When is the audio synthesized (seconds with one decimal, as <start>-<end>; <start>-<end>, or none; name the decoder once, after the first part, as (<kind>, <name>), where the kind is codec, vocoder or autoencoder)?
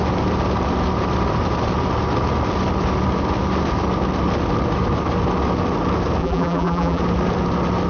6.2-7.0 (vocoder, BigVGAN v2)